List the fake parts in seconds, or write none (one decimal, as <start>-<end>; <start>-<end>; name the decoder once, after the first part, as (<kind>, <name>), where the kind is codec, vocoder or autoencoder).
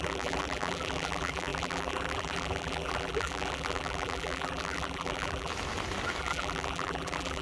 0.0-5.5 (vocoder, BigVGAN v2); 6.2-7.4